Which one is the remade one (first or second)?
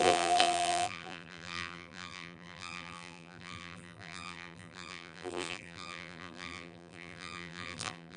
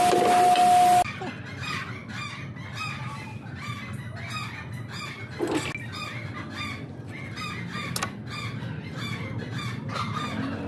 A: first